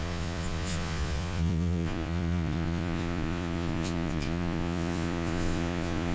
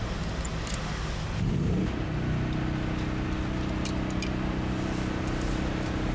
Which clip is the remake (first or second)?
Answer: first